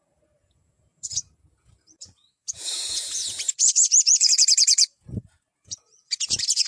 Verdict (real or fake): fake